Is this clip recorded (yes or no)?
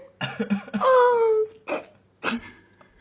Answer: yes